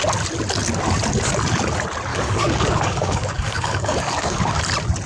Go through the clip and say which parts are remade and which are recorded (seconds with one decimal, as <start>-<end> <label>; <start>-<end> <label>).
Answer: 0.0-2.1 recorded; 2.1-4.6 remade; 4.6-5.1 recorded